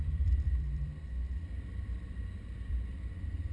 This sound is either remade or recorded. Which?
remade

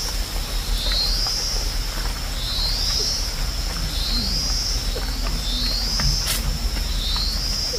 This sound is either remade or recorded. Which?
recorded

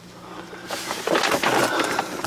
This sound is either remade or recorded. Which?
remade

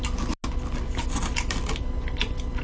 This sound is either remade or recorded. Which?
recorded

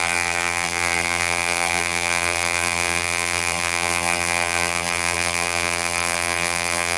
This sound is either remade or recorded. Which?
remade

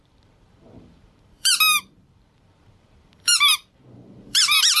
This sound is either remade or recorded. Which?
remade